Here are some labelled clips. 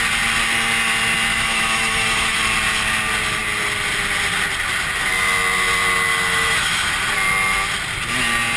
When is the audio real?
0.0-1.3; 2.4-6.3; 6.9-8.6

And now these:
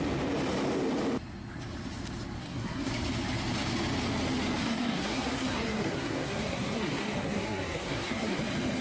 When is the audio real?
0.0-2.4; 2.9-4.6; 8.4-8.8

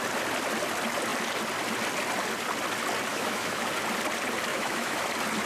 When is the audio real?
0.0-3.1; 3.7-4.5; 5.1-5.5

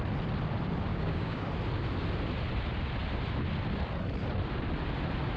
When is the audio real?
0.0-0.9; 1.5-5.4